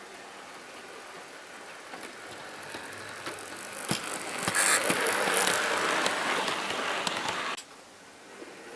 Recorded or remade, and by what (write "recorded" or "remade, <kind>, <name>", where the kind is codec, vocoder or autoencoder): recorded